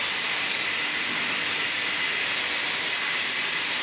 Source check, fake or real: real